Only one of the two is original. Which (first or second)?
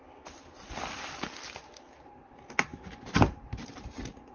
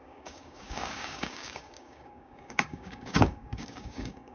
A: first